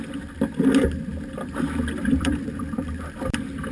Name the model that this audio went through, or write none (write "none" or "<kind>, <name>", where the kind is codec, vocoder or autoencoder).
vocoder, BigVGAN v2